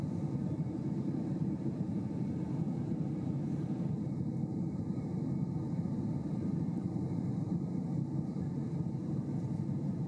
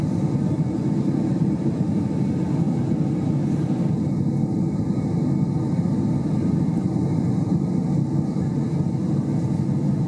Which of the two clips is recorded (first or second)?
second